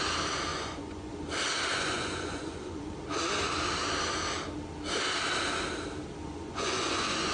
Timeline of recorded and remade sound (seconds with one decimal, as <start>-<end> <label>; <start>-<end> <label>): 0.0-0.5 recorded; 0.5-1.1 remade; 1.1-1.7 recorded; 1.7-2.9 remade; 2.9-6.2 recorded; 6.2-7.3 remade